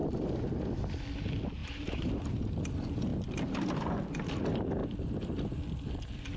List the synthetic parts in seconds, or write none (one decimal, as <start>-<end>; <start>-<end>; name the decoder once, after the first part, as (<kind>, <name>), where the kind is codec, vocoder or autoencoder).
0.0-0.6 (vocoder, BigVGAN v2); 1.6-2.1